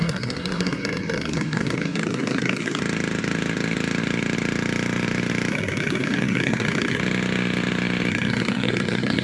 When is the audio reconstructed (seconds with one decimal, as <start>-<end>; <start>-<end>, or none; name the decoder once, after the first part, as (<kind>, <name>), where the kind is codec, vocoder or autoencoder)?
0.0-2.8 (codec, SNAC); 5.5-7.0; 8.1-9.2